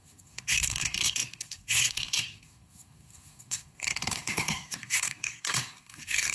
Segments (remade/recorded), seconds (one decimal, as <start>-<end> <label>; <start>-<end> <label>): 0.0-6.3 remade